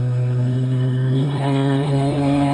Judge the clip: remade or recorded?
remade